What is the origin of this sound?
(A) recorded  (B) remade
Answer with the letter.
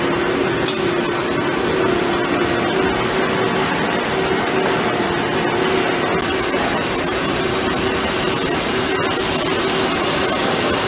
A